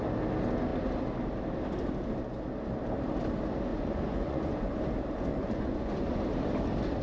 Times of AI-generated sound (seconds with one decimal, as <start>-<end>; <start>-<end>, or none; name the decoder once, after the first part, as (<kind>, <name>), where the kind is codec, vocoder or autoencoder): 3.7-4.8 (vocoder, Vocos); 5.3-6.2